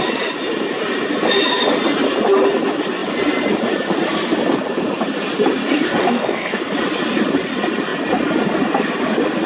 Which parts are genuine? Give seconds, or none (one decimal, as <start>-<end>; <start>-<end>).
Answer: 0.0-6.0; 6.6-9.5